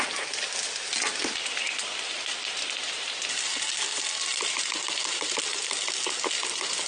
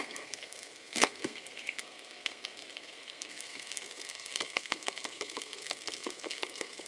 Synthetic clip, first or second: second